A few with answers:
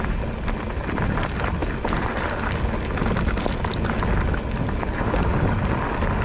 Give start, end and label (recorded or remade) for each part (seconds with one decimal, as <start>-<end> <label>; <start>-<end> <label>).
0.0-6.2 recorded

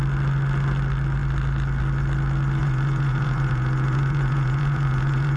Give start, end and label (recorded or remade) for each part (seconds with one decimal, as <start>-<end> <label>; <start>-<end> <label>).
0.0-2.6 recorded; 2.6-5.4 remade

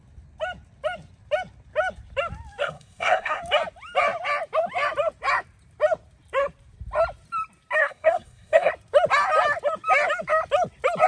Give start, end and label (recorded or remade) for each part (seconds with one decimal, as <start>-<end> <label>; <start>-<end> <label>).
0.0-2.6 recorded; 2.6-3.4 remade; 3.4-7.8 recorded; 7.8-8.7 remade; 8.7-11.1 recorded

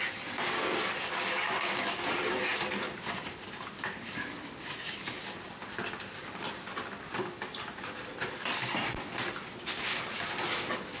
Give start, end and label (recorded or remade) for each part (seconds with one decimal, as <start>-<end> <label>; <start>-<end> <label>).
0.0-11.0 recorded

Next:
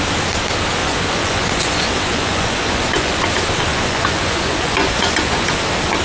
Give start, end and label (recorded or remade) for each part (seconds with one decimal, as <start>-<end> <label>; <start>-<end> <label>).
0.0-0.8 recorded; 0.8-3.3 remade; 3.3-3.7 recorded; 3.7-5.5 remade; 5.5-6.0 recorded

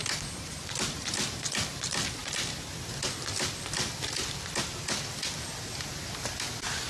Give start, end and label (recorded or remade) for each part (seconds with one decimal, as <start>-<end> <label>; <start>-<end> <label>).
0.0-6.9 recorded

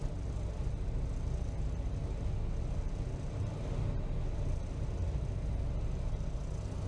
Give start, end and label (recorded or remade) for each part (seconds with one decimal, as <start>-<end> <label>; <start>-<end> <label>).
0.0-6.9 recorded